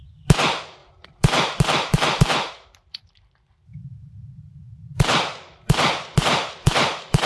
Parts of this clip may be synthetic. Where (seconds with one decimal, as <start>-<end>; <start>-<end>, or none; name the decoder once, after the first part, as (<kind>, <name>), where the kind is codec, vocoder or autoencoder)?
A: 0.8-3.1 (vocoder, BigVGAN v2); 3.7-7.3